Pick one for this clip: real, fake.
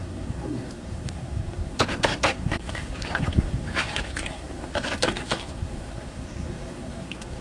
fake